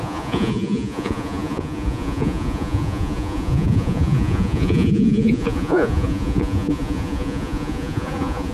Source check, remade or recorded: remade